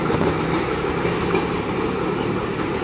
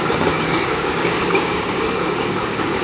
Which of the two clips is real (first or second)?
first